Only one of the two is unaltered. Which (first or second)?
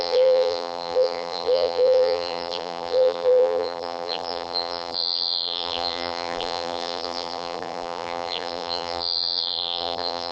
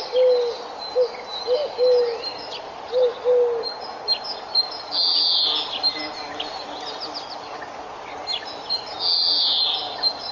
second